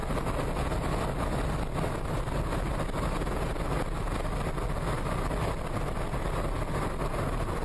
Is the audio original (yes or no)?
yes